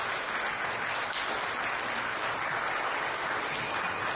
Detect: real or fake real